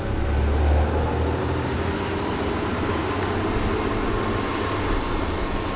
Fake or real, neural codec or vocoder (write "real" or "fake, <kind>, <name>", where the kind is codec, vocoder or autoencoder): real